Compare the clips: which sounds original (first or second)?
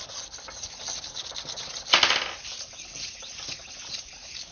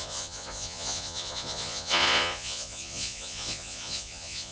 first